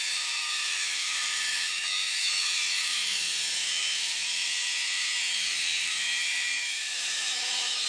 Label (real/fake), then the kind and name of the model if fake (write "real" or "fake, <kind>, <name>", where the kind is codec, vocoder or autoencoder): fake, autoencoder, DAC-VAE